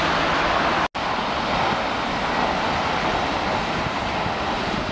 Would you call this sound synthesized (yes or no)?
no